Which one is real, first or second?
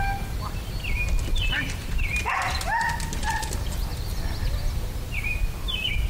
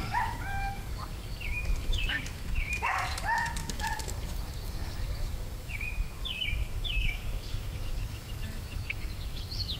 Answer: first